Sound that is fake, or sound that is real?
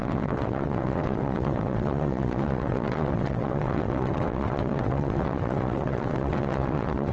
fake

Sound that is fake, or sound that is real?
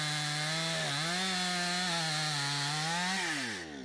real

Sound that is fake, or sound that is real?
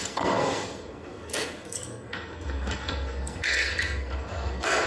fake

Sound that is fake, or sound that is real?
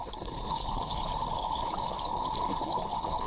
fake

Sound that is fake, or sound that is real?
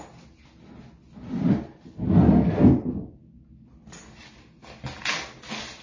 real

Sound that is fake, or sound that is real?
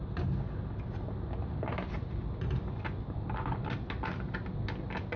real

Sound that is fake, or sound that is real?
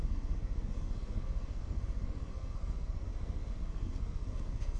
fake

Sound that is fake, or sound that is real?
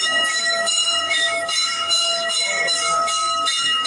fake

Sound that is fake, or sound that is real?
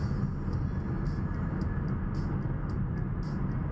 real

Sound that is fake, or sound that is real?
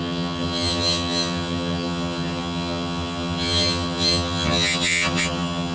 fake